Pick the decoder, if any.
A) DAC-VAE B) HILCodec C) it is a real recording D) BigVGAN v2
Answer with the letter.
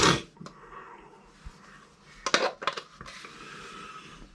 C